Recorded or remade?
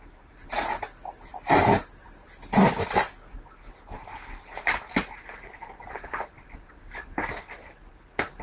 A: recorded